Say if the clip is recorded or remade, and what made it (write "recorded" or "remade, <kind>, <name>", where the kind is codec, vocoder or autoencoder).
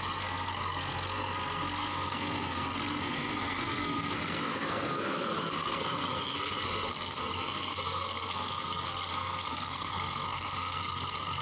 remade, codec, SNAC